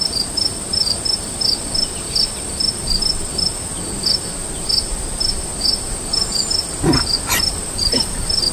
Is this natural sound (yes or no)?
yes